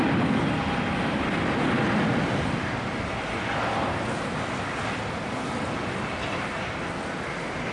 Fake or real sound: real